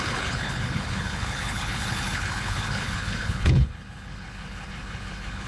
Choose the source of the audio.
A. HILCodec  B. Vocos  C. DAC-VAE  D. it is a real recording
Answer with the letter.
A